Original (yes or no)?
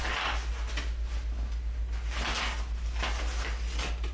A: yes